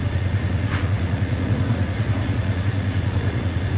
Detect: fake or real fake